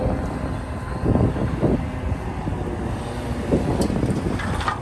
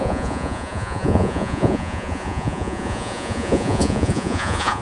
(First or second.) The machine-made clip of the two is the second